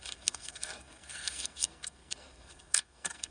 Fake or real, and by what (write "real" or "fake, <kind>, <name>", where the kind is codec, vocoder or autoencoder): fake, codec, SNAC